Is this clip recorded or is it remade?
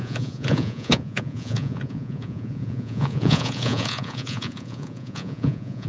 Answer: remade